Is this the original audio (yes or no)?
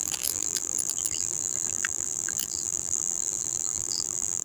no